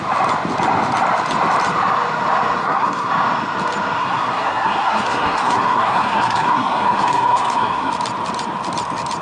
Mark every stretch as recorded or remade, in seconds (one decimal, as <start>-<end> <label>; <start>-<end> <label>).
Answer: 0.0-2.6 recorded; 2.6-3.1 remade; 3.1-4.0 recorded; 4.0-7.9 remade; 7.9-9.2 recorded